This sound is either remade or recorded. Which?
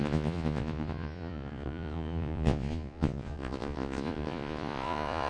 remade